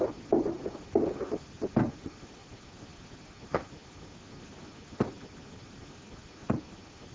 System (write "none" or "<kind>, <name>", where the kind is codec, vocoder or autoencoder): none